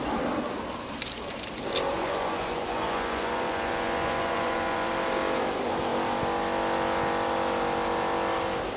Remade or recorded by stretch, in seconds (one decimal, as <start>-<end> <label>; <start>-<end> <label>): 0.0-1.9 recorded; 1.9-4.9 remade; 4.9-8.8 recorded